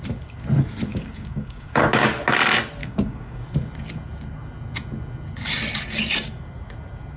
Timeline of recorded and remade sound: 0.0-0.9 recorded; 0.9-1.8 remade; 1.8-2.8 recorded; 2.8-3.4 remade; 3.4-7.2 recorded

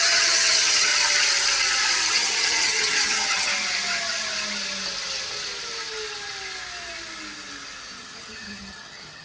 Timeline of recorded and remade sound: 0.0-0.9 remade; 0.9-2.1 recorded; 2.1-3.5 remade; 3.5-8.0 recorded; 8.0-9.2 remade

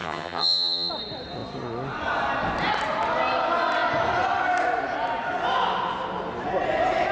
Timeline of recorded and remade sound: 0.0-0.9 remade; 0.9-7.1 recorded

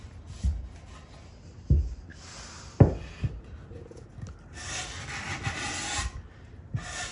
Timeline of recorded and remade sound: 0.0-7.1 recorded